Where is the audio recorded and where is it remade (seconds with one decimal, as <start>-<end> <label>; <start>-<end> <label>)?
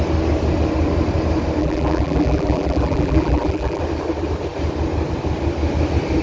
0.0-1.6 recorded; 1.6-3.8 remade; 3.8-6.2 recorded